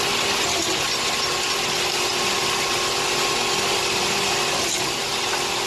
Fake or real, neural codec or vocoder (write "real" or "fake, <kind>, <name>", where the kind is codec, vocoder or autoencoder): real